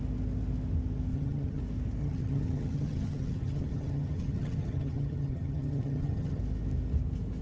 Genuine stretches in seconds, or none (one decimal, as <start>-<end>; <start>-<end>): 0.0-1.1; 1.6-2.0; 6.4-7.4